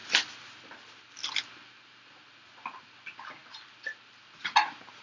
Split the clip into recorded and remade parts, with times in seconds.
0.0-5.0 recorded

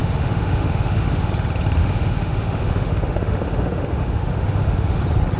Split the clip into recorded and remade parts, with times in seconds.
0.0-1.3 remade; 1.3-1.8 recorded; 1.8-5.0 remade; 5.0-5.4 recorded

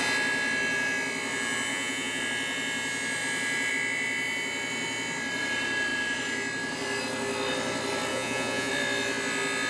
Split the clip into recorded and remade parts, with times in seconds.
0.0-1.7 recorded; 1.7-2.2 remade; 2.2-8.1 recorded; 8.1-8.7 remade; 8.7-9.7 recorded